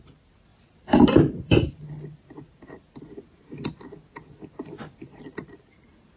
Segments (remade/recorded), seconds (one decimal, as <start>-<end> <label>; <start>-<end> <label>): 0.0-0.5 recorded; 0.5-1.9 remade; 1.9-6.2 recorded